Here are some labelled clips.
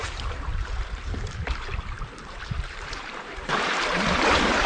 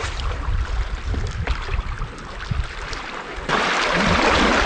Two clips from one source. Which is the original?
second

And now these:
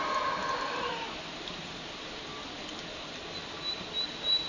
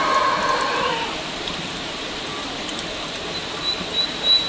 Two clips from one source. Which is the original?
first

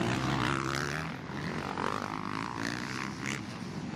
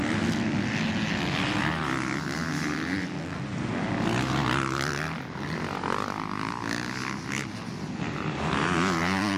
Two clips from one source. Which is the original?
second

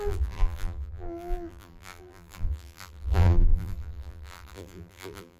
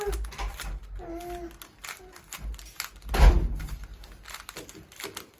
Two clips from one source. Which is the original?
second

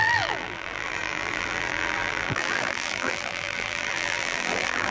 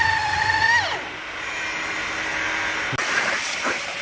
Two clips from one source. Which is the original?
second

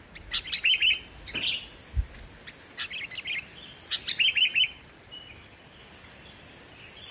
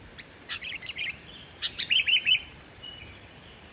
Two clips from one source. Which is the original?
first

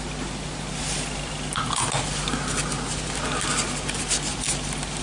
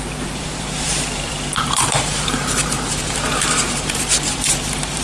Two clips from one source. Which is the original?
first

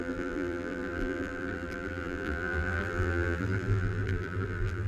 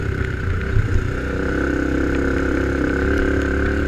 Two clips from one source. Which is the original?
second